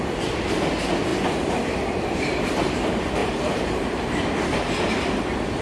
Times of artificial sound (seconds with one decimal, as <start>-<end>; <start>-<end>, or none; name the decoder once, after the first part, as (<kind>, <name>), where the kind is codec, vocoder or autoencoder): 1.1-1.6 (vocoder, BigVGAN v2); 3.2-4.2